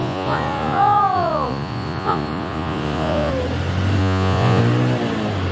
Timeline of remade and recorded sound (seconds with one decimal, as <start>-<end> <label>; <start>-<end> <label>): 0.0-3.3 remade; 3.3-4.0 recorded; 4.0-4.6 remade; 4.6-5.5 recorded

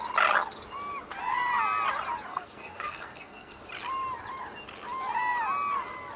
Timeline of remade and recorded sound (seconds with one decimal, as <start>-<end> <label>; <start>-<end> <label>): 0.0-2.3 recorded; 2.3-3.6 remade; 3.6-6.2 recorded